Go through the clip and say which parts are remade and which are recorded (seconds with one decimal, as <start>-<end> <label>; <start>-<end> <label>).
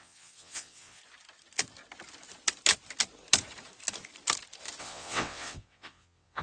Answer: 0.0-1.0 remade; 1.0-4.8 recorded; 4.8-6.4 remade